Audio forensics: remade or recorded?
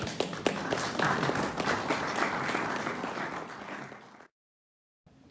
recorded